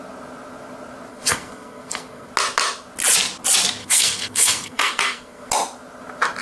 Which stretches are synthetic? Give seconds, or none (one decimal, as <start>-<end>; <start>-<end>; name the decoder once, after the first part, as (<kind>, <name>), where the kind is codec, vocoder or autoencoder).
1.1-2.3 (codec, SNAC); 3.8-5.5